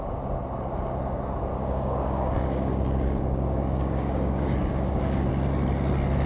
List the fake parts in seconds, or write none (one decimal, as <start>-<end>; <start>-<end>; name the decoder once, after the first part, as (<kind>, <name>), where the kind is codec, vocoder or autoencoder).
1.5-5.3 (codec, DAC)